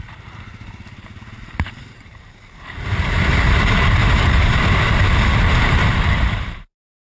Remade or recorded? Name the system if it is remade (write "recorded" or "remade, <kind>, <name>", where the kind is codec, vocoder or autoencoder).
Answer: remade, vocoder, BigVGAN v2